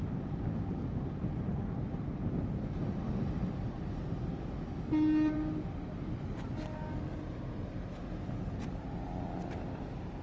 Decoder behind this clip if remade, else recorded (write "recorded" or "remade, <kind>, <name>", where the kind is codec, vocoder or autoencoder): recorded